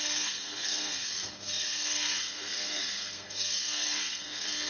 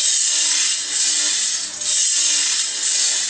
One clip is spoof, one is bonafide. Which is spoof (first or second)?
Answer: first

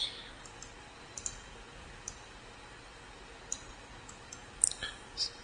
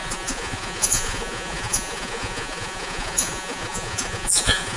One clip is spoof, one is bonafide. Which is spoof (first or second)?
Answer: second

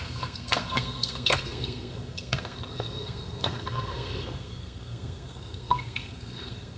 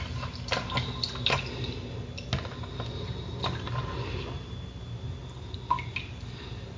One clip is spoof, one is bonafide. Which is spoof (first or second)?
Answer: first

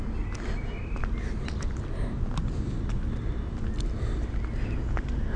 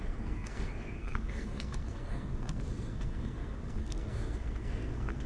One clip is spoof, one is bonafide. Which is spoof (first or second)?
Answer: second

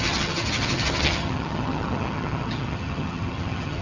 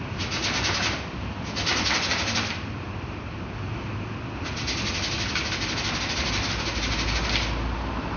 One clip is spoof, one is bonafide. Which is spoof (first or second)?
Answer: first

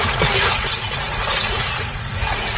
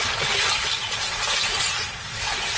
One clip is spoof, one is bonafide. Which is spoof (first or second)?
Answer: first